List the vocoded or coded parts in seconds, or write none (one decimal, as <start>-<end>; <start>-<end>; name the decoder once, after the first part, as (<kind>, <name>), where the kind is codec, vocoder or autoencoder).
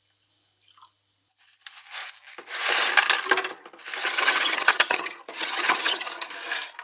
4.0-6.3 (vocoder, HiFi-GAN)